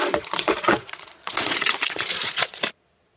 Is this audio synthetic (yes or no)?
yes